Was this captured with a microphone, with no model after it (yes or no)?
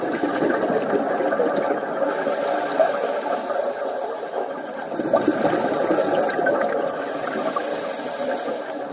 yes